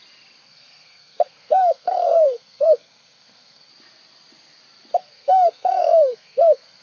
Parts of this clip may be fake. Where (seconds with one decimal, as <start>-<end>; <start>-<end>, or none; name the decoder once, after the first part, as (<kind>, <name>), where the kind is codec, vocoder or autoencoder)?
0.4-3.7 (codec, SNAC); 5.0-6.8